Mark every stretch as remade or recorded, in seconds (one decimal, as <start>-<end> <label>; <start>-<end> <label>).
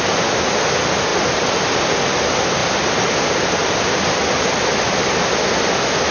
0.0-6.1 recorded